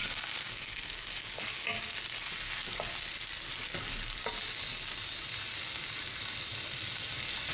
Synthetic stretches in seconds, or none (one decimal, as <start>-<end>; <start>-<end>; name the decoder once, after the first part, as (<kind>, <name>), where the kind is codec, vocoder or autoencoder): 0.0-1.4 (codec, DAC)